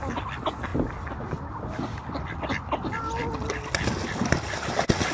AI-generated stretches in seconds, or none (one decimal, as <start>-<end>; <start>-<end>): none